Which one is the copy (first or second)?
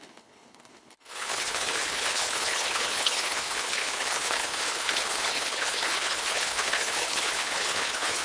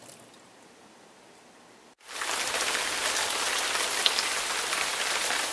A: first